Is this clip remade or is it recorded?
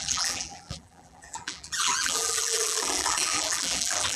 remade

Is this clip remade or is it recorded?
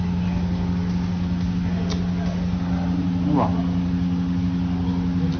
recorded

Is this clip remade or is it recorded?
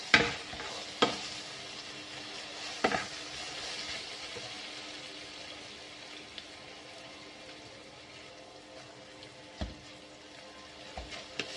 recorded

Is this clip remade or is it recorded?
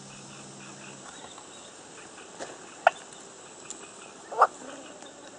recorded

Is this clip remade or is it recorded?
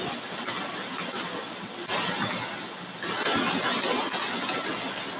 recorded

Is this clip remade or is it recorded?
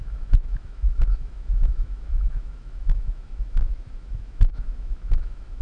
remade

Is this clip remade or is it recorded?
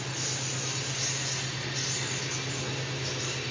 recorded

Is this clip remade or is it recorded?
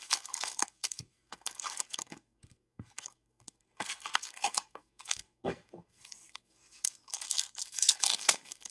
remade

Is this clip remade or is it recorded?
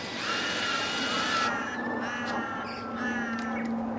recorded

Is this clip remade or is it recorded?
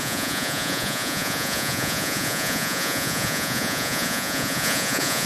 remade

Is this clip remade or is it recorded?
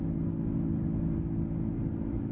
recorded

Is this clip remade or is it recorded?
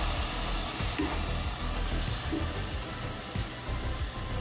recorded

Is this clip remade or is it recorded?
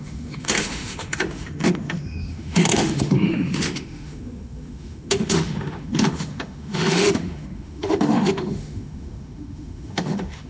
remade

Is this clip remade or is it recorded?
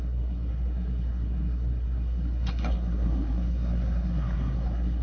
remade